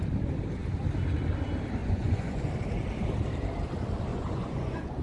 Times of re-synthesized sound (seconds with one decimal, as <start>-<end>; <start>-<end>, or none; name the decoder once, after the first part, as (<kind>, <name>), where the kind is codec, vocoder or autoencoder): 1.8-2.5 (vocoder, Vocos); 4.1-5.0